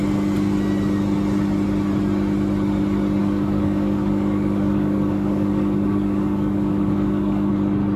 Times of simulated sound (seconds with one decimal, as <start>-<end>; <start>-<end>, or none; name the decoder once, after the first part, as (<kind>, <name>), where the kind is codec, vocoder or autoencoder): 3.2-7.5 (codec, DAC)